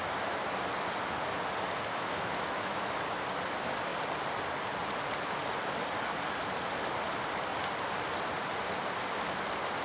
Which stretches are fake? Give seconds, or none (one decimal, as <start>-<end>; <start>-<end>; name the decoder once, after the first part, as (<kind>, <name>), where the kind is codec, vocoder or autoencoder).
1.9-2.9 (autoencoder, DAC-VAE)